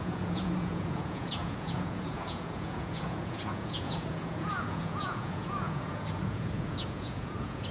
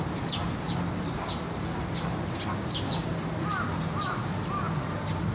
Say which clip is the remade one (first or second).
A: first